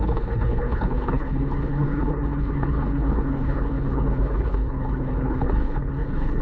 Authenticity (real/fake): fake